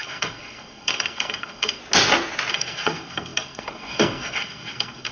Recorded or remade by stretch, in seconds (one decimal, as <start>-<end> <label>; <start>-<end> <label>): 0.0-1.8 remade; 1.8-2.5 recorded; 2.5-5.1 remade